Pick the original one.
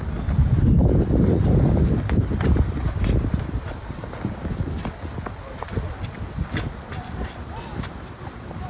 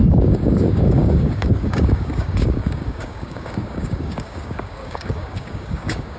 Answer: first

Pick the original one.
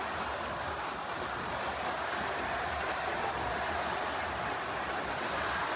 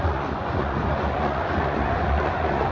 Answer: first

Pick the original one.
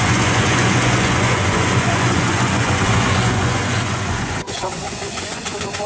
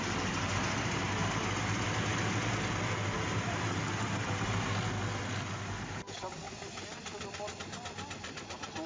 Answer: second